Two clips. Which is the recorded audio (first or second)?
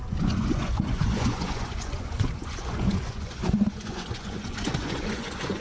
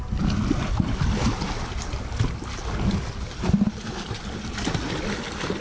second